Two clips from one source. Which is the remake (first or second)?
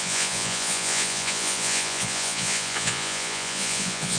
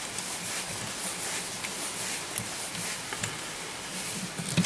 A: first